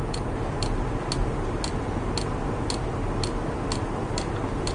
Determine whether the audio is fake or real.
real